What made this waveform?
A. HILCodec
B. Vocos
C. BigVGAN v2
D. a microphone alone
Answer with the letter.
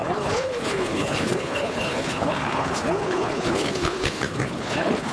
A